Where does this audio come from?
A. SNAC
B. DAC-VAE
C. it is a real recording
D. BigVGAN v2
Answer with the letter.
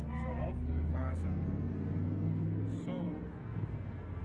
A